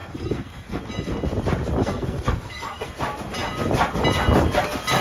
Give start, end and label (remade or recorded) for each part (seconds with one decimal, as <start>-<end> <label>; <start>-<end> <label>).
0.0-0.8 remade; 0.8-1.8 recorded; 1.8-2.9 remade; 2.9-5.0 recorded